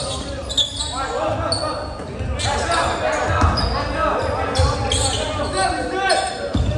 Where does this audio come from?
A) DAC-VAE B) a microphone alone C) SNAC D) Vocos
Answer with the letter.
B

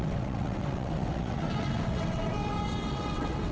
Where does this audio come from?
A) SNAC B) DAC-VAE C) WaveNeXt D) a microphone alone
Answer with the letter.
C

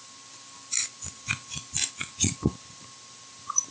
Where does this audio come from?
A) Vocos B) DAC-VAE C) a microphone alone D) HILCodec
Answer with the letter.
C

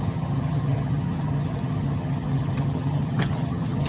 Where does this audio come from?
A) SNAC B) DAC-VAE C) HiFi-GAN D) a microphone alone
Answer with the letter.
C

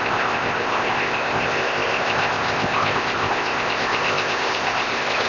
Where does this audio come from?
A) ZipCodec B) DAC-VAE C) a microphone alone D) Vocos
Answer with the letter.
A